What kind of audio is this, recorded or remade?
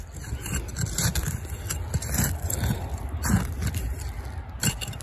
recorded